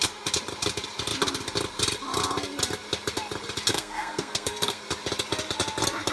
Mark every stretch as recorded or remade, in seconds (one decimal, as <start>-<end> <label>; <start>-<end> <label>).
0.0-3.7 recorded; 3.7-4.8 remade; 4.8-6.1 recorded